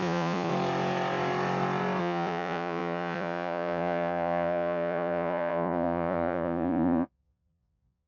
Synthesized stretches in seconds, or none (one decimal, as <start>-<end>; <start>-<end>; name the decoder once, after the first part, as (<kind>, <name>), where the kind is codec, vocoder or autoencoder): 0.0-0.5 (vocoder, Vocos); 2.0-8.1